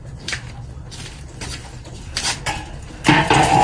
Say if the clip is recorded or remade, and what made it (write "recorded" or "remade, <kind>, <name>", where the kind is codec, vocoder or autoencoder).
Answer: recorded